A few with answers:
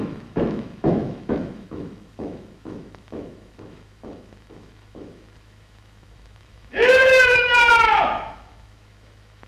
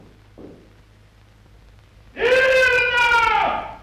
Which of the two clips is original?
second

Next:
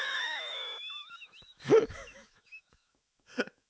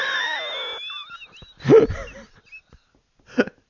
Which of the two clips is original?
second